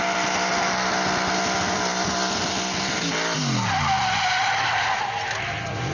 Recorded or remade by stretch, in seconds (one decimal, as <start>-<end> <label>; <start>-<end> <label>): 0.0-5.9 recorded